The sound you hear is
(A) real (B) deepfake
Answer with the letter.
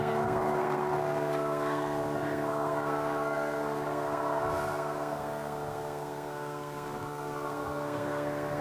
B